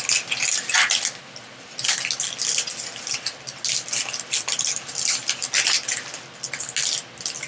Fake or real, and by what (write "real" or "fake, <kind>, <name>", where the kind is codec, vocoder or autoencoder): real